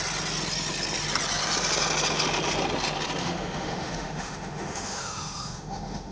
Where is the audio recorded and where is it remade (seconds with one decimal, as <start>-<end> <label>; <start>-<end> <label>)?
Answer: 0.0-3.2 recorded; 3.2-6.1 remade